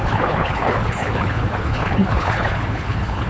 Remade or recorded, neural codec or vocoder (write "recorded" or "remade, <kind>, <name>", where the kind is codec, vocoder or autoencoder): remade, codec, HILCodec